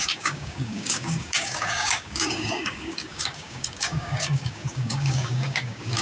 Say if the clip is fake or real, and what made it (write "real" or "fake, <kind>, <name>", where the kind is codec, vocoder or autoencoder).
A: fake, codec, DAC